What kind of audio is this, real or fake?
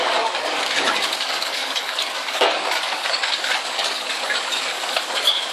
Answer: fake